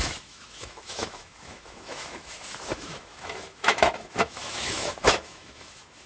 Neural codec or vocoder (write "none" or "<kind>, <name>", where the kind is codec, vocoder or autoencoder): autoencoder, DAC-VAE